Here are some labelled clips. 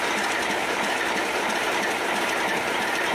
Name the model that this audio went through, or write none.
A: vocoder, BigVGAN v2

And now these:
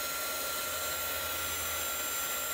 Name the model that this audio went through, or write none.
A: none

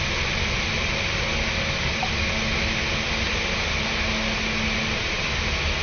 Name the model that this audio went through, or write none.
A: none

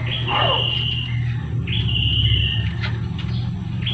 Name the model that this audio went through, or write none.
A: none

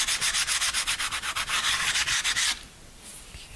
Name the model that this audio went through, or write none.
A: vocoder, BigVGAN v2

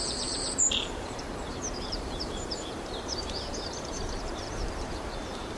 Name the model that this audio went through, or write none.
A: vocoder, BigVGAN v2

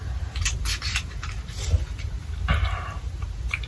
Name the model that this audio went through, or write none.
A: vocoder, BigVGAN v2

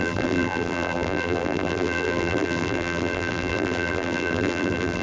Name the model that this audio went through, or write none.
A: vocoder, BigVGAN v2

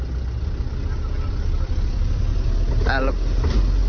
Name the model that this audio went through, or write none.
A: vocoder, BigVGAN v2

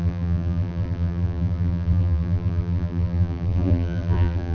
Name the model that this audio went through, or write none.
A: vocoder, BigVGAN v2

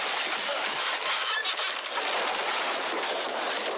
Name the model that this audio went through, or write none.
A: none